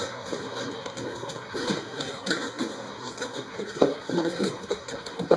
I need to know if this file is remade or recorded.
remade